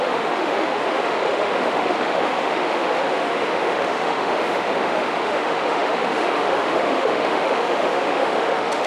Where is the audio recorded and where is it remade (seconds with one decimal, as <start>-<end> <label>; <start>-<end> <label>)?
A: 0.0-8.9 remade